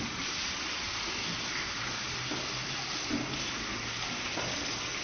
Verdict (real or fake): real